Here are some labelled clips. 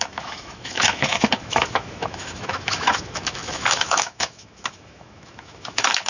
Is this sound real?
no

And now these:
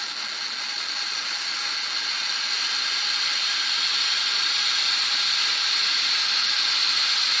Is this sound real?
yes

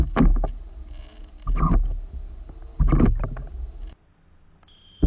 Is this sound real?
yes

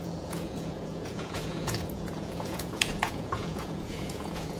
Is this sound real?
no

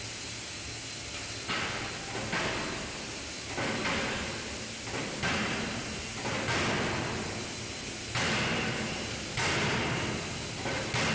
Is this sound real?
yes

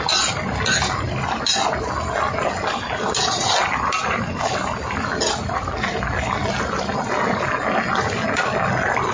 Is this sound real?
yes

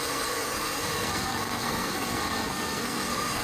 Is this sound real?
no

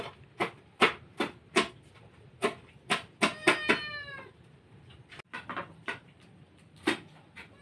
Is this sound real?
yes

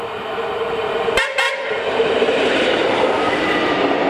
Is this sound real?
yes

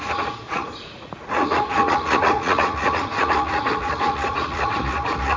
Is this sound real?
no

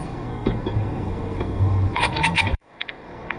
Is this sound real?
no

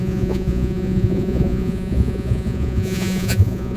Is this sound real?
no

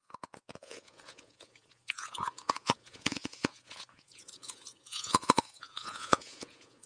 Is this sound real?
no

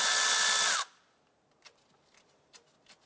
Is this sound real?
yes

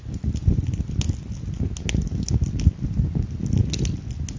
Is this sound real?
yes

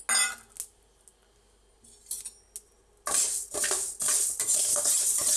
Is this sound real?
yes